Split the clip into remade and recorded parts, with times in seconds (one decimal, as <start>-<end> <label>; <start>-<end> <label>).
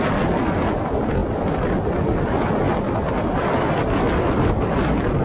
0.0-5.2 recorded